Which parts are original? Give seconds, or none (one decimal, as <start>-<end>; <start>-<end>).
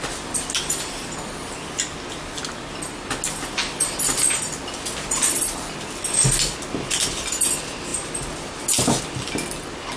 0.0-10.0